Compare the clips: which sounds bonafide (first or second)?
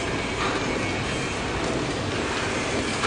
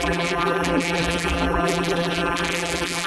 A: first